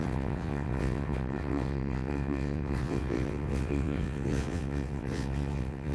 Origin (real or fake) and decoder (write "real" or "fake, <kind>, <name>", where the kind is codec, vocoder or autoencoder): fake, vocoder, WaveNeXt